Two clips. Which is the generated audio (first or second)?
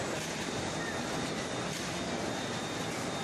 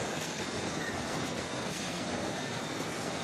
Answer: second